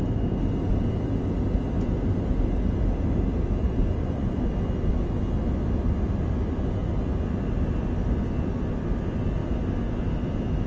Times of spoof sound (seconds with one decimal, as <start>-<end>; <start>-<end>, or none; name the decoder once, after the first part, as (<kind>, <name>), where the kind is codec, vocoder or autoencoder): 3.6-4.5 (vocoder, Vocos)